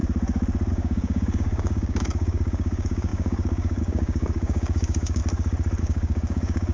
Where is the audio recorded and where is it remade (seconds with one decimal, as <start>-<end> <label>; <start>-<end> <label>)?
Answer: 0.0-0.7 recorded; 0.7-5.2 remade; 5.2-5.8 recorded; 5.8-6.7 remade